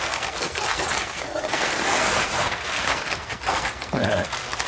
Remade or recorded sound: remade